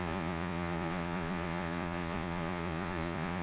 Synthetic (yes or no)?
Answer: yes